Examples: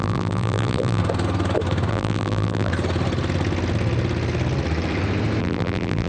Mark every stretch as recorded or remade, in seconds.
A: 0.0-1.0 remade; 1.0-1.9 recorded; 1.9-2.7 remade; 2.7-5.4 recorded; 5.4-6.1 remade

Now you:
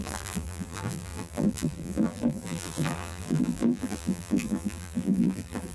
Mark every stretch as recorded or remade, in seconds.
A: 0.0-5.7 remade

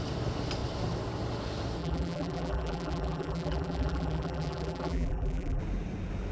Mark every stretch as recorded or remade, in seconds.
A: 0.0-1.8 recorded; 1.8-5.6 remade; 5.6-6.3 recorded

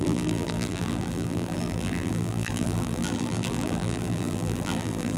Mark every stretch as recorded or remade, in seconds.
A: 0.0-5.2 remade

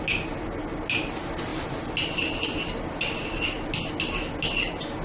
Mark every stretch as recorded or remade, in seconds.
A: 0.0-5.0 recorded

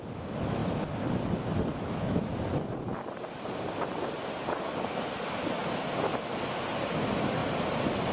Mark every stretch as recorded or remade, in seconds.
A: 0.0-8.1 recorded

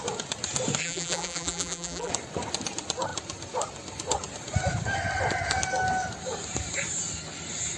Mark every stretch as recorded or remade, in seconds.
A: 0.0-0.8 recorded; 0.8-2.1 remade; 2.1-7.8 recorded

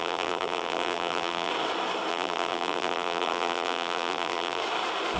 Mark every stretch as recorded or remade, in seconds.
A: 0.0-1.5 remade; 1.5-2.1 recorded; 2.1-4.6 remade; 4.6-5.2 recorded